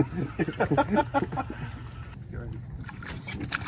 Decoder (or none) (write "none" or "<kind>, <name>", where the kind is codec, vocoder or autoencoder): none